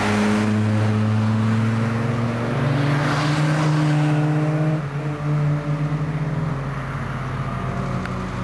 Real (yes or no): yes